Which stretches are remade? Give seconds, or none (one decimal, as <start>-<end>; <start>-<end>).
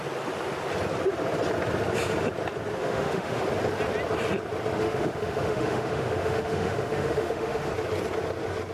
2.8-3.4; 4.8-7.7